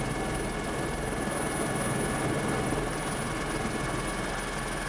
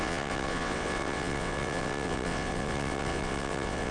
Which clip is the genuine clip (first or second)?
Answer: first